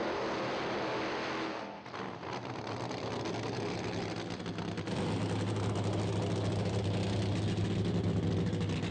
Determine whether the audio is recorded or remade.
recorded